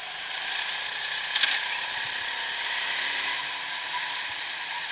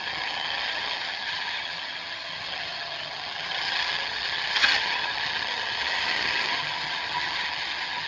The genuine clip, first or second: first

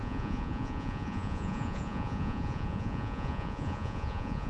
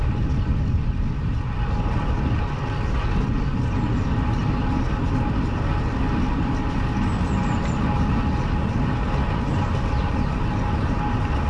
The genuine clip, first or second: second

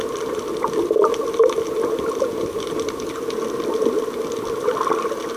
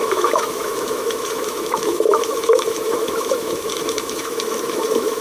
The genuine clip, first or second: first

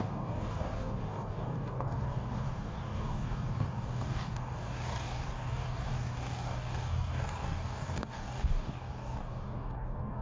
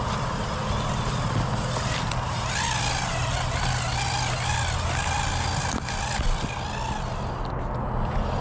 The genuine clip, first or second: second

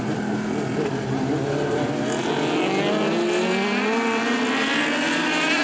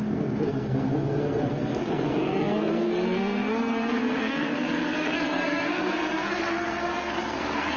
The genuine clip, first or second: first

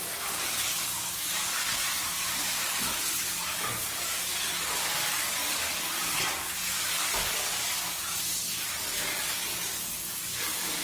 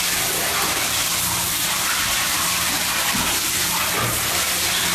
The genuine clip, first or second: second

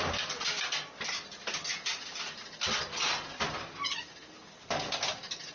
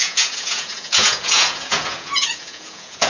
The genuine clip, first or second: first